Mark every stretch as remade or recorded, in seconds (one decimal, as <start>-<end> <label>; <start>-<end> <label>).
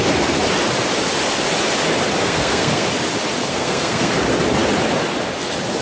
0.0-2.2 recorded; 2.2-2.9 remade; 2.9-3.5 recorded; 3.5-4.1 remade; 4.1-5.8 recorded